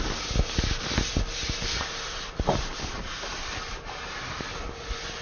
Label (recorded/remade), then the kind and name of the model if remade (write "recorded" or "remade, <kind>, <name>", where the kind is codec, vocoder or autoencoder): recorded